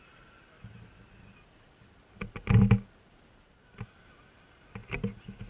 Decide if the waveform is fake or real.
real